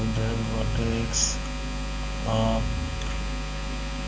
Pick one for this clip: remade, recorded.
recorded